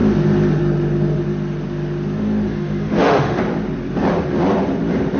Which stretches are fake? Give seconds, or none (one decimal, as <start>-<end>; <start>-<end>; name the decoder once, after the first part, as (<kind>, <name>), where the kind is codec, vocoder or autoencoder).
2.5-3.4 (autoencoder, DAC-VAE)